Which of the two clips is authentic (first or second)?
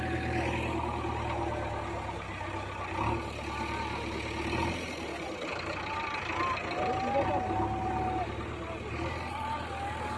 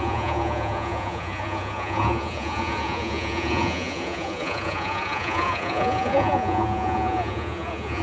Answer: first